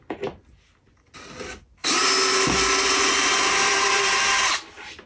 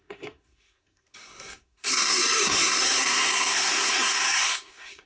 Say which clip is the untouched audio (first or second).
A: first